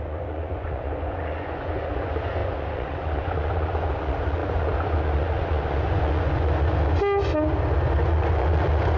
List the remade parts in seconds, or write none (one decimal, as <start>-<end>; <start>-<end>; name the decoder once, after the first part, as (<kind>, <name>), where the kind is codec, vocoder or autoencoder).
0.0-7.0 (vocoder, Vocos); 8.1-9.0